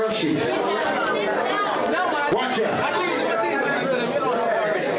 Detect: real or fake real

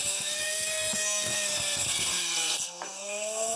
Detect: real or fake fake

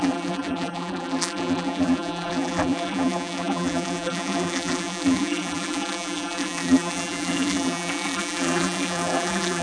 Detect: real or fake fake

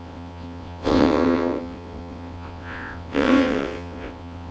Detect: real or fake fake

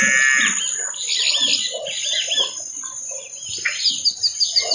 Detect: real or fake real